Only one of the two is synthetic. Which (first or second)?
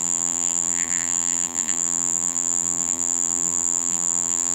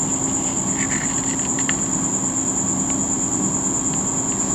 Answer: first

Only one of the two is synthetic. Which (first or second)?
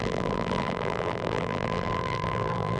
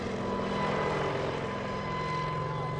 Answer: first